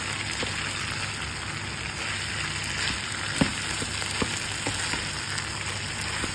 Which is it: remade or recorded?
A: recorded